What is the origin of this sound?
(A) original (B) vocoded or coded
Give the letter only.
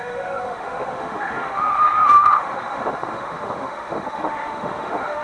B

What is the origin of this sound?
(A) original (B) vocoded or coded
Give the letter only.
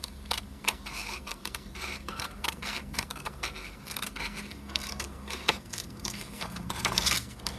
B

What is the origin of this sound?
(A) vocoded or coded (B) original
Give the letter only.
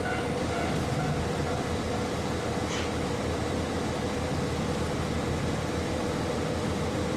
B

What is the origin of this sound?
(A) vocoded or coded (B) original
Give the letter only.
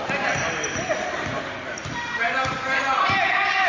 B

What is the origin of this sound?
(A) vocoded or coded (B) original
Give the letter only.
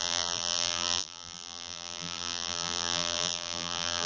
A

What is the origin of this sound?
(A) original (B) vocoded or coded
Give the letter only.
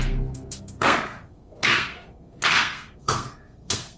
B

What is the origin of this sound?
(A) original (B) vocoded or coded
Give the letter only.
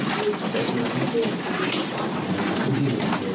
A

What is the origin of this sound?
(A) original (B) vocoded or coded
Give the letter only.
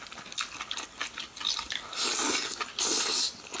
A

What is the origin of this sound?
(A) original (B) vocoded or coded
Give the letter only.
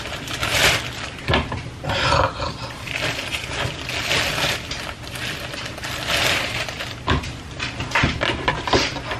A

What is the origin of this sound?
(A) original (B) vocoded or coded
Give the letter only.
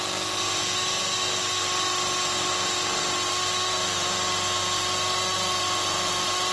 A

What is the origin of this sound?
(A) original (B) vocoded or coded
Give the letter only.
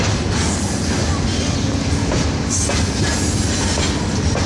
A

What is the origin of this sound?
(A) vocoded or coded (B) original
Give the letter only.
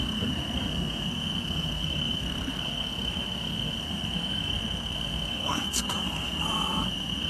A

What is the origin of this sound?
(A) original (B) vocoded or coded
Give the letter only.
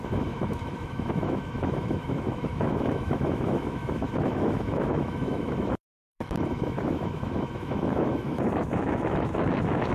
B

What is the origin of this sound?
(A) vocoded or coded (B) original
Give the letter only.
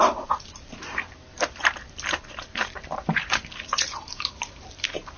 A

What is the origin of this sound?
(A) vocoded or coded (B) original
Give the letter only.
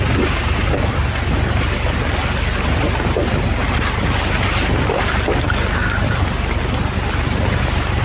B